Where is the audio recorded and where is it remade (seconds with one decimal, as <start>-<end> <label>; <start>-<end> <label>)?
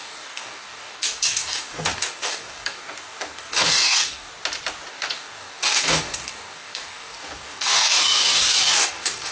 0.0-4.3 remade; 4.3-4.9 recorded; 4.9-9.3 remade